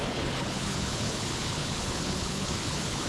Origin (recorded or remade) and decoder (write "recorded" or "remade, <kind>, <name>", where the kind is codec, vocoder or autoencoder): remade, codec, HILCodec